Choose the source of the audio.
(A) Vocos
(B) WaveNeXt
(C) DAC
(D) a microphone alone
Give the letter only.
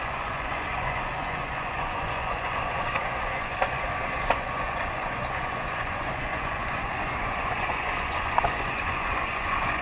A